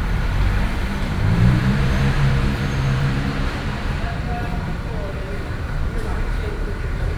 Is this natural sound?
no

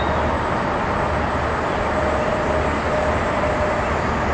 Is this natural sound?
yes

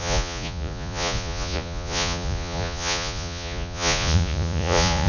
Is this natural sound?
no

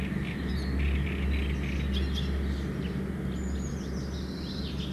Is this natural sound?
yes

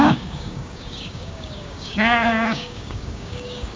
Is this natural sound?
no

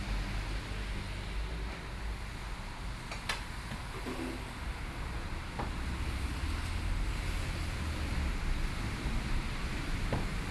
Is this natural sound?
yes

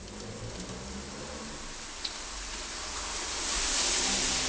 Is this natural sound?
yes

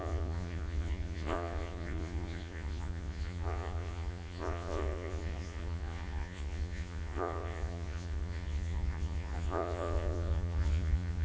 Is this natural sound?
no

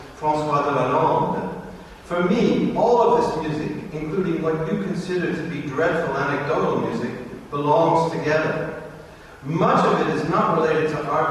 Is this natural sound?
no